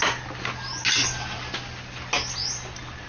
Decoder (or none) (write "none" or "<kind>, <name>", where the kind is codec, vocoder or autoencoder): none